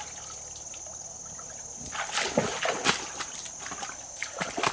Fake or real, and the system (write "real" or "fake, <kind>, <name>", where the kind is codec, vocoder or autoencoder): real